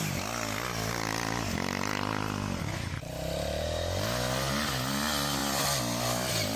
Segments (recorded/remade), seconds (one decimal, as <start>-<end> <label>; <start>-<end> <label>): 0.0-6.6 recorded